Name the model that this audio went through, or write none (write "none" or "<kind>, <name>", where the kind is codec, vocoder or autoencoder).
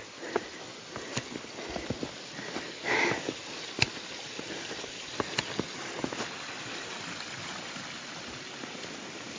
none